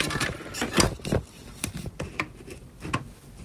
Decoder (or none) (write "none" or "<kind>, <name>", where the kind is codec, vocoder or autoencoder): none